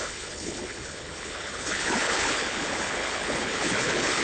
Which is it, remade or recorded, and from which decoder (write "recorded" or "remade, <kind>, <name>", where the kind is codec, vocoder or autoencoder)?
remade, codec, HILCodec